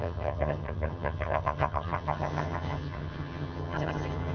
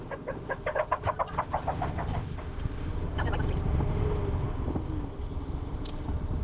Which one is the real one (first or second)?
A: second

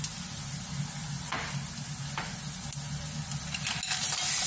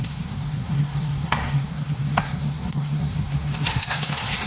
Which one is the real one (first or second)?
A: first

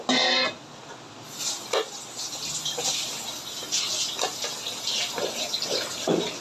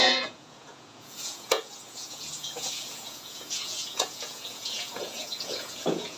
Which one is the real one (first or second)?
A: first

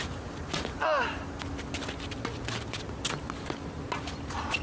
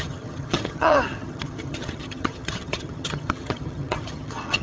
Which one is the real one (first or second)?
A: first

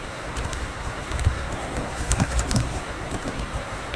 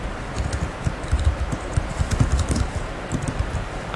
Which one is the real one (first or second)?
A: second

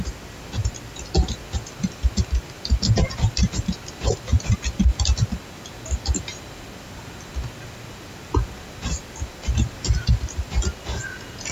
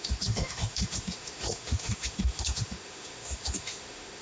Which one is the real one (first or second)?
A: first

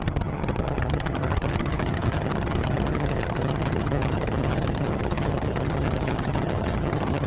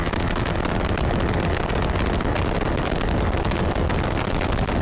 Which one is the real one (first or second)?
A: second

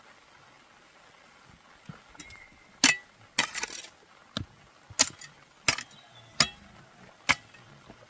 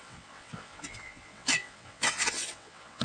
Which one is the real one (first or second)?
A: first